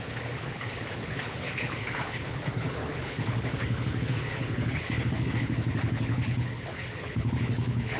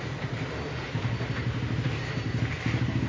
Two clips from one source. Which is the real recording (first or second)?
second